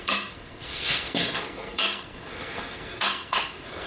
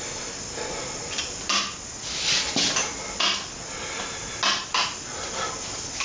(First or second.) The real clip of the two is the second